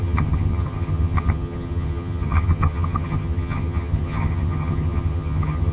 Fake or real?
fake